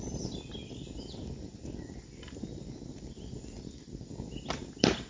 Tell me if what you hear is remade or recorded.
recorded